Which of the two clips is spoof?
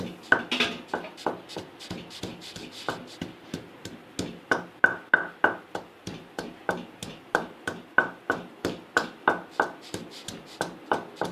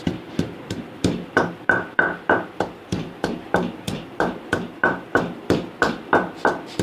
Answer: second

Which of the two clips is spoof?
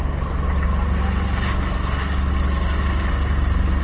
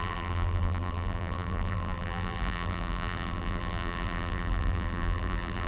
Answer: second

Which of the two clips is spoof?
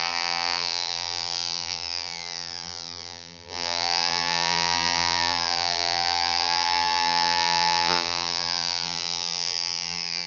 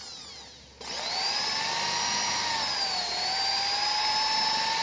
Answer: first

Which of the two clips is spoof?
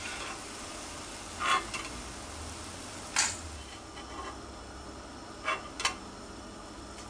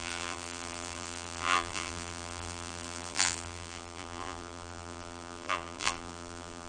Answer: second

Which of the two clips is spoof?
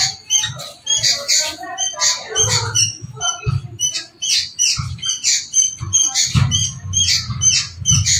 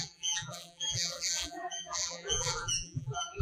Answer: second